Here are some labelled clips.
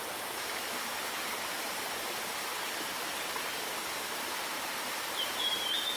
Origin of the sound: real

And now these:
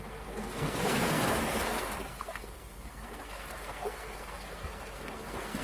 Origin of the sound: fake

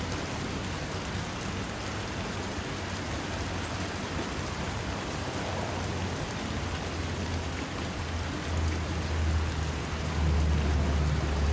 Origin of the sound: real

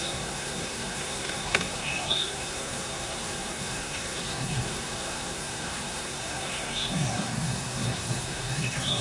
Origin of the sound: fake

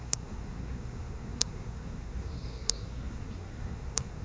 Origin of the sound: fake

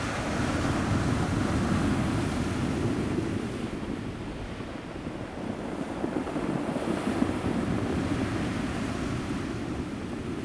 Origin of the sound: real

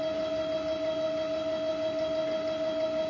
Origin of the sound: real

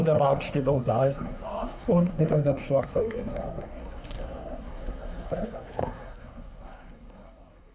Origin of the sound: fake